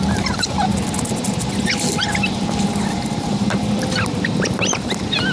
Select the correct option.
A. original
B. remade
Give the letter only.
A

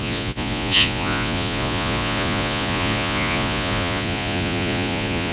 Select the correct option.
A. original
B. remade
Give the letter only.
B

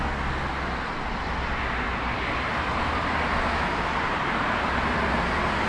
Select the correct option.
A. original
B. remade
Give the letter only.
A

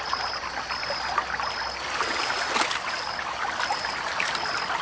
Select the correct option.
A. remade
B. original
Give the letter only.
B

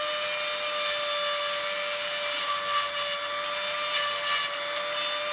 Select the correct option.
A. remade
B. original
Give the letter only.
B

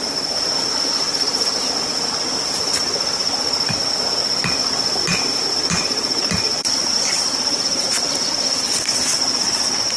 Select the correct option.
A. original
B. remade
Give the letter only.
A